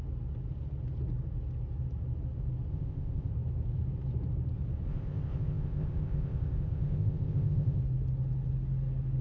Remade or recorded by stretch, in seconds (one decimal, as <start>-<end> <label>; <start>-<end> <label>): 0.0-2.7 recorded; 2.7-3.3 remade; 3.3-4.9 recorded; 4.9-7.8 remade; 7.8-9.2 recorded